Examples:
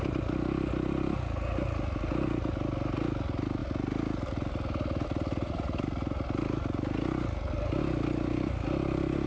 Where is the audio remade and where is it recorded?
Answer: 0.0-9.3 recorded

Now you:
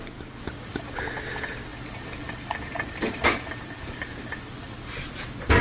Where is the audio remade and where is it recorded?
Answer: 0.0-1.7 recorded; 1.7-5.1 remade; 5.1-5.6 recorded

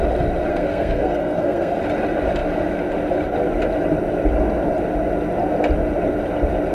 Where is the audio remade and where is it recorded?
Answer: 0.0-0.5 recorded; 0.5-1.7 remade; 1.7-6.7 recorded

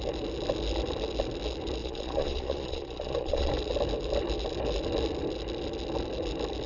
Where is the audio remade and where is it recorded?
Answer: 0.0-1.8 recorded; 1.8-3.5 remade; 3.5-6.7 recorded

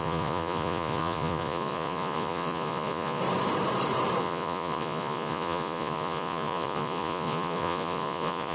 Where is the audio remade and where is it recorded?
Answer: 0.0-3.2 remade; 3.2-4.2 recorded; 4.2-8.5 remade

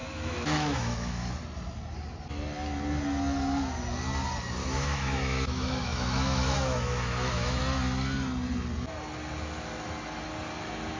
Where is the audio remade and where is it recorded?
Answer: 0.0-1.3 remade; 1.3-4.6 recorded; 4.6-7.6 remade; 7.6-11.0 recorded

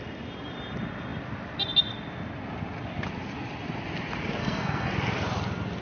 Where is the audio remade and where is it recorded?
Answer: 0.0-4.4 recorded; 4.4-4.9 remade; 4.9-5.8 recorded

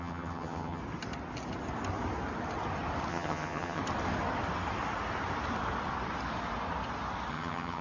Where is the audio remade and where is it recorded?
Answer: 0.0-0.8 remade; 0.8-3.1 recorded; 3.1-3.8 remade; 3.8-7.3 recorded; 7.3-7.8 remade